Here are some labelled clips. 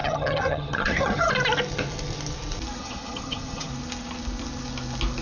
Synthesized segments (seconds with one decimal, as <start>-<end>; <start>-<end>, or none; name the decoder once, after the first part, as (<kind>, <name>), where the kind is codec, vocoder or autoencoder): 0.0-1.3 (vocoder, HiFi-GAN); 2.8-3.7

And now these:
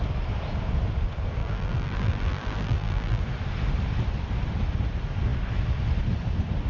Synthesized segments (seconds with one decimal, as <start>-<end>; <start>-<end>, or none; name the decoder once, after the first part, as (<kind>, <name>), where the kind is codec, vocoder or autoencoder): 1.4-3.2 (vocoder, BigVGAN v2)

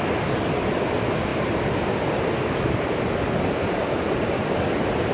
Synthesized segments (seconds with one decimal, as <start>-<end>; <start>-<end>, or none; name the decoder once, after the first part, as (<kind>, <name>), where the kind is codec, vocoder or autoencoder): none

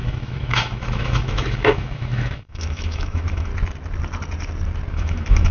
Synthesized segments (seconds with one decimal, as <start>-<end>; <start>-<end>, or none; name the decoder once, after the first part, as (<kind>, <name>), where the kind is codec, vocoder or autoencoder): 0.0-3.5 (autoencoder, DAC-VAE); 4.9-5.5

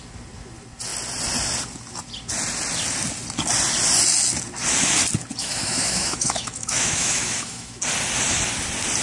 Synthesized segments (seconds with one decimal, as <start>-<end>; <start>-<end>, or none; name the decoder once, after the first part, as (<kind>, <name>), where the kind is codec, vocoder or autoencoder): 5.4-7.8 (autoencoder, DAC-VAE)

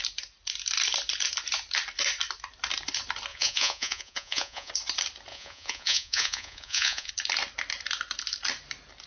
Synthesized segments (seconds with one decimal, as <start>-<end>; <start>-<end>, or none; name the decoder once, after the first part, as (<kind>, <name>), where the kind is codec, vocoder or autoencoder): 3.3-4.7 (vocoder, Vocos); 5.3-7.1

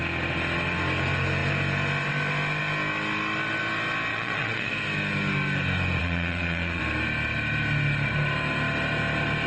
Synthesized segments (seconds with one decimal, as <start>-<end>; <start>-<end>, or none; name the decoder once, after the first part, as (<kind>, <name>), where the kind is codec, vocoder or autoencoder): 4.1-4.7 (vocoder, Vocos); 6.0-6.8